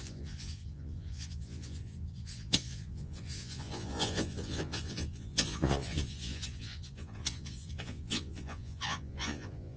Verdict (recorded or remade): remade